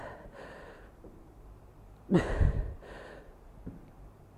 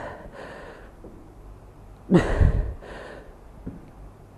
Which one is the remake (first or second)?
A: first